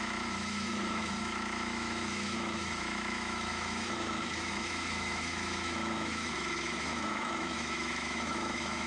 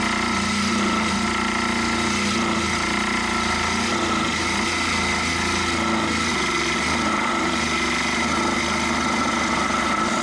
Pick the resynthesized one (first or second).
first